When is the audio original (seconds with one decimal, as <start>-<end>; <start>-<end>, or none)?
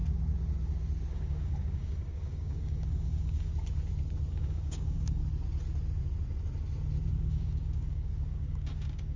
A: 0.0-1.1; 3.5-4.3; 5.2-7.1